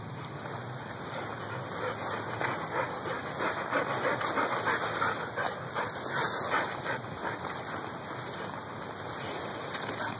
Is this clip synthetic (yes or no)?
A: no